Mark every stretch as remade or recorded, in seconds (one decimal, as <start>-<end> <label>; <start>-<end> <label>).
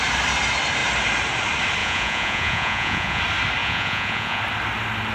0.0-1.8 recorded; 1.8-3.2 remade; 3.2-3.6 recorded; 3.6-4.4 remade; 4.4-5.1 recorded